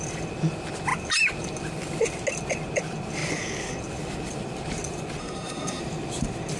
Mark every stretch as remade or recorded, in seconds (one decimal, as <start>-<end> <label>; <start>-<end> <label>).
0.0-5.2 recorded; 5.2-5.8 remade; 5.8-6.6 recorded